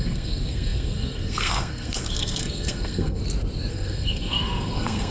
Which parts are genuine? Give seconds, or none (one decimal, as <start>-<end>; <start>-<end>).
3.2-3.7